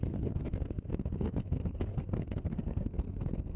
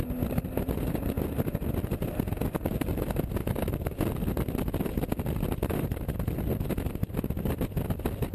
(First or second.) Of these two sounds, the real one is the second